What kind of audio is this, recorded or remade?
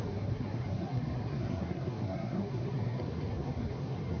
remade